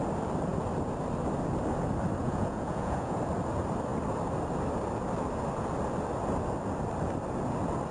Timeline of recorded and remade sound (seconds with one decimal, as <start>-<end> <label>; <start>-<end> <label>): 0.0-2.2 recorded; 2.2-3.2 remade; 3.2-7.9 recorded